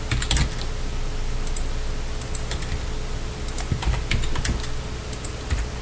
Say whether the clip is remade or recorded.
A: recorded